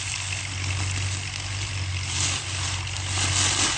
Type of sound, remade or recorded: recorded